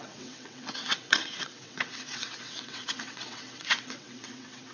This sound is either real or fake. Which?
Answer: fake